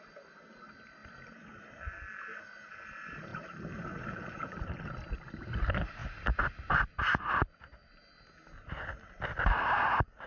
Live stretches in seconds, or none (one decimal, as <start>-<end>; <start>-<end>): 0.0-3.3; 4.8-10.3